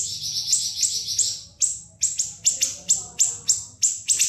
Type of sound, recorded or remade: recorded